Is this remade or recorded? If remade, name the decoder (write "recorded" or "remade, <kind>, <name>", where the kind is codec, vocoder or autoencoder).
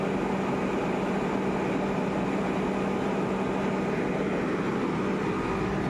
recorded